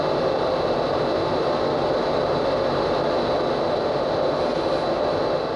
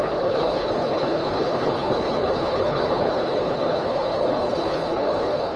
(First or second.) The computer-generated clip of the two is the second